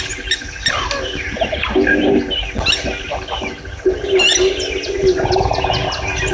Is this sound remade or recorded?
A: recorded